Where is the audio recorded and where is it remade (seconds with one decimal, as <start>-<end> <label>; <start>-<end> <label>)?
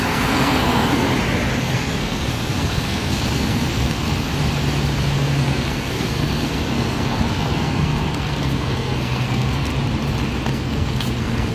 0.0-1.1 remade; 1.1-1.6 recorded; 1.6-4.3 remade; 4.3-5.0 recorded; 5.0-9.7 remade; 9.7-10.5 recorded; 10.5-11.5 remade